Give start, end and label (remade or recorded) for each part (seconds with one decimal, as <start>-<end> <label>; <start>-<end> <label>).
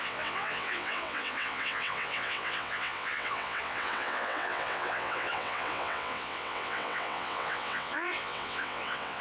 0.0-9.2 remade